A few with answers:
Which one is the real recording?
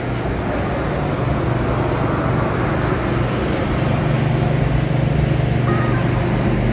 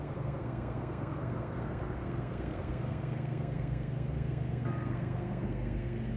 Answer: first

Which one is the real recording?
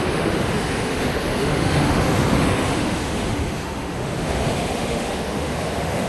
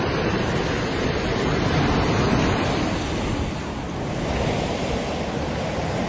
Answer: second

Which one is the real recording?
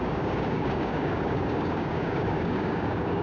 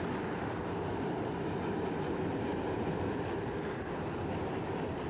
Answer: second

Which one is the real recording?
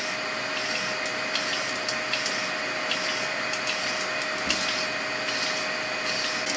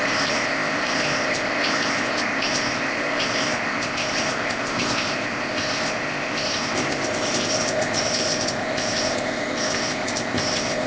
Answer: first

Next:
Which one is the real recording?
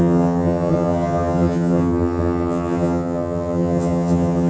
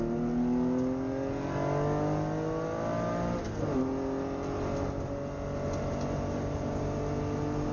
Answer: second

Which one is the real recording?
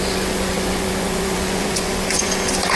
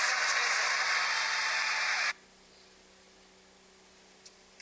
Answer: second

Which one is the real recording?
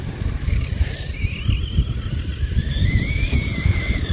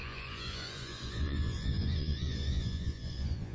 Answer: first